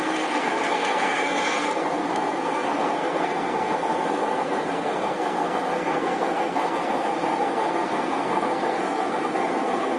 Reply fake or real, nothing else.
fake